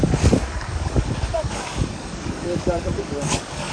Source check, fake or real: fake